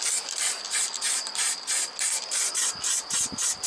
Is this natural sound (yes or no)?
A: yes